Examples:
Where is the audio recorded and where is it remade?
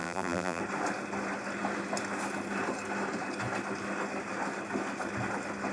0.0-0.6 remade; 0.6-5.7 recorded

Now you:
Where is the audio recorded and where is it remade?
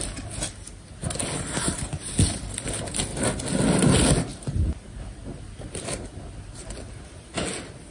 0.0-1.2 recorded; 1.2-2.1 remade; 2.1-4.3 recorded; 4.3-5.0 remade; 5.0-7.9 recorded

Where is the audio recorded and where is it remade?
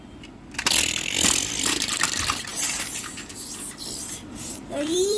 0.0-2.5 recorded; 2.5-5.2 remade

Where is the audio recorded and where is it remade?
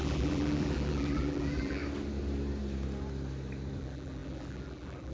0.0-1.8 remade; 1.8-3.8 recorded; 3.8-5.1 remade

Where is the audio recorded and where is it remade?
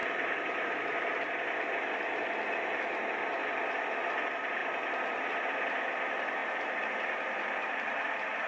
0.0-1.1 remade; 1.1-6.4 recorded; 6.4-8.5 remade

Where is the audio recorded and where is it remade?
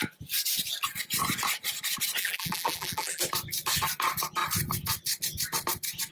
0.0-2.2 recorded; 2.2-3.2 remade; 3.2-6.1 recorded